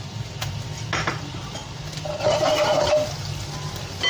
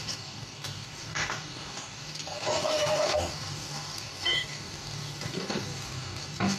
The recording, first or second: first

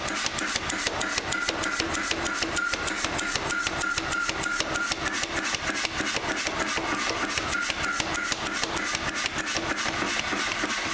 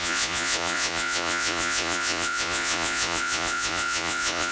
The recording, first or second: first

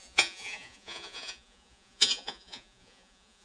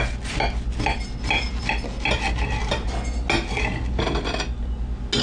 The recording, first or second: second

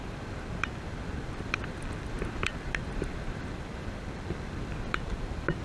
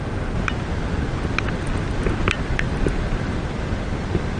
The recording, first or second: second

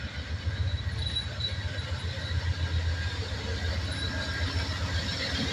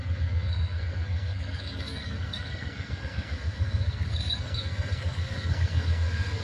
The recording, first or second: first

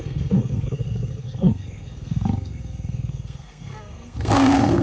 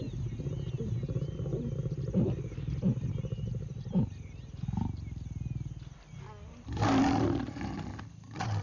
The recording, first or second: second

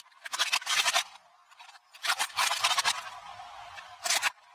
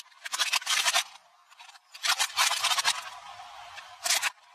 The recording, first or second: first